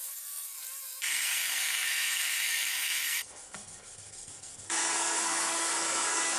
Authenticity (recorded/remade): remade